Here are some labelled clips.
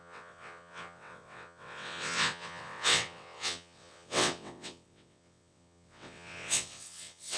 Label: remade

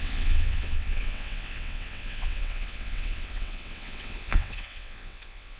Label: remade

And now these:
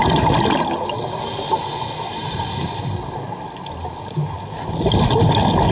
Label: recorded